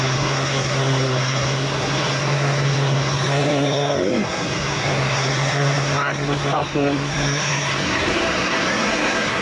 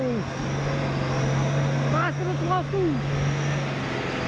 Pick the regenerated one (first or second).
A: first